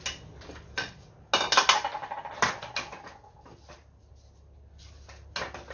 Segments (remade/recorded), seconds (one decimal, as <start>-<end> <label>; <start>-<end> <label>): 0.0-5.7 recorded